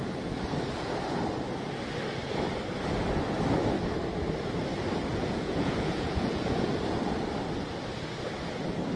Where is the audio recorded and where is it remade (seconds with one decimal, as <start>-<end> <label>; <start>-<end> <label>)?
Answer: 0.0-5.1 recorded; 5.1-6.7 remade; 6.7-9.0 recorded